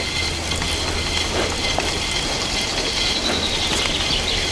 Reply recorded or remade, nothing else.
recorded